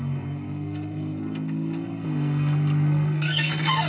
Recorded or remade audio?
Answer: remade